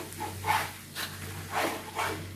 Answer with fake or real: real